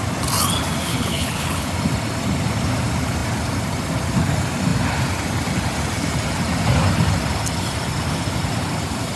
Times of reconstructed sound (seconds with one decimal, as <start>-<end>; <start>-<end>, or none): 0.9-1.7

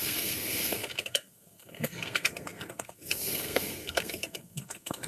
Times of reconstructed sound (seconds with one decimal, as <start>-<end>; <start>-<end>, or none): 0.0-5.1

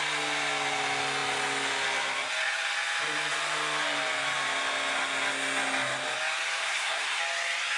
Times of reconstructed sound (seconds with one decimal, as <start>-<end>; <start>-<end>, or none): 6.6-7.2

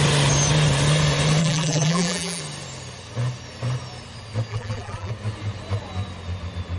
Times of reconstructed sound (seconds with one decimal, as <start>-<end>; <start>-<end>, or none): 1.4-2.4; 4.5-5.1

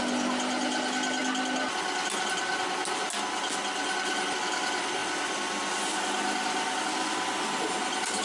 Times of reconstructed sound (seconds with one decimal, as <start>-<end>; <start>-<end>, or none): none

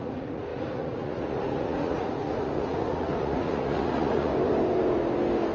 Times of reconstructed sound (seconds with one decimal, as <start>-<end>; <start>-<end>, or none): 0.0-4.3

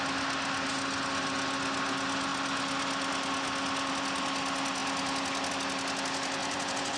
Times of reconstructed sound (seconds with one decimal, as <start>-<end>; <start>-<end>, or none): 6.4-7.0